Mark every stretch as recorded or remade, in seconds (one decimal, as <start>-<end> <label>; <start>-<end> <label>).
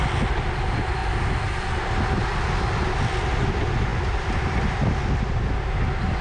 0.0-6.2 recorded